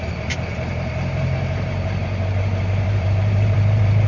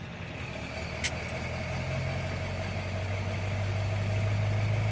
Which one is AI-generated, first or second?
first